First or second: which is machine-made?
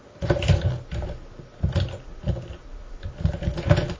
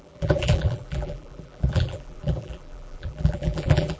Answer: second